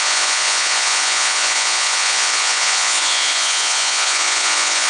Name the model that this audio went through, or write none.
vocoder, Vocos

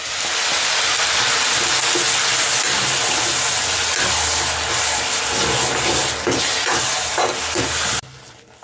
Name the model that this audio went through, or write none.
none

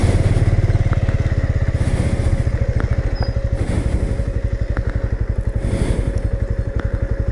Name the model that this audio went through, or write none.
none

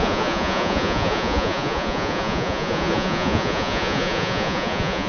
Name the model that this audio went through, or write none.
vocoder, Vocos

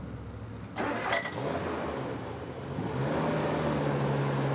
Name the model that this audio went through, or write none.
none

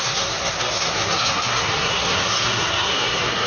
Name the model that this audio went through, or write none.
codec, SNAC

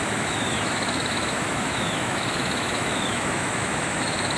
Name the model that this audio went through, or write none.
autoencoder, DAC-VAE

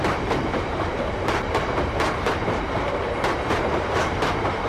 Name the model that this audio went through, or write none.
vocoder, BigVGAN v2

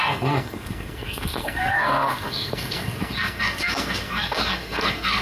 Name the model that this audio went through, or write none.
codec, SNAC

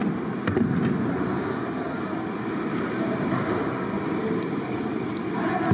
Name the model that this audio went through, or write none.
none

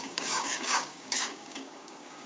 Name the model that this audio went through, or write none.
codec, DAC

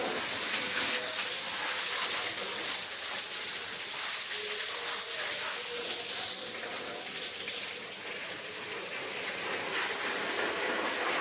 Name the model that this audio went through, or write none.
none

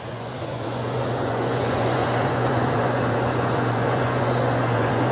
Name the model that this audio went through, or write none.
vocoder, Vocos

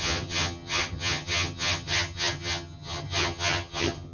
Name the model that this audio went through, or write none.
vocoder, HiFi-GAN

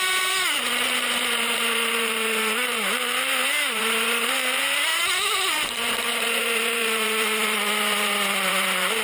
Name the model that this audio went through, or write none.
vocoder, BigVGAN v2